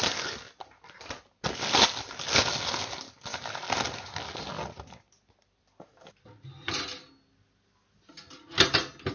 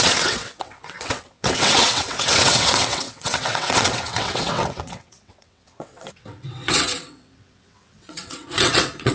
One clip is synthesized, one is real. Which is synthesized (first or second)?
second